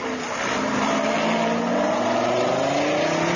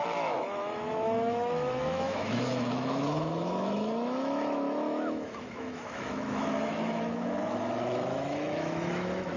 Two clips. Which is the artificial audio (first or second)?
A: second